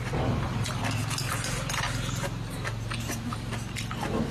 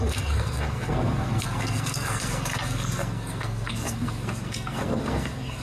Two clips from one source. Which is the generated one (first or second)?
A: second